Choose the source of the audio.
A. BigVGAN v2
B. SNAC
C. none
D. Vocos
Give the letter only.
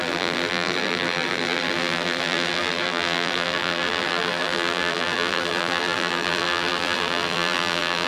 A